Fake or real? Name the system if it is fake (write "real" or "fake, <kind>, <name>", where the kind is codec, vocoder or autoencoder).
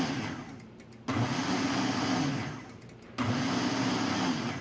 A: real